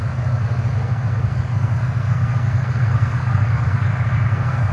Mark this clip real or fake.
fake